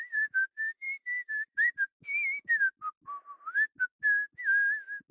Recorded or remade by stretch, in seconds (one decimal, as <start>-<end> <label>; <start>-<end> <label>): 0.0-1.9 remade; 1.9-5.1 recorded